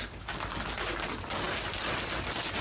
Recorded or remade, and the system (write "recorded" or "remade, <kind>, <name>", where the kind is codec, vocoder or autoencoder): recorded